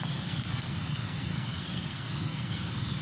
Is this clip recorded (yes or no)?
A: no